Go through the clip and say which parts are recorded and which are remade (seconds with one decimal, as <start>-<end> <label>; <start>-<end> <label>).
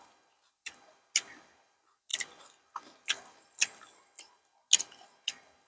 0.0-5.7 recorded